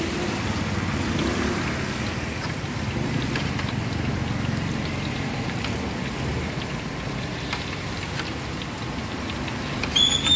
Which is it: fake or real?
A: real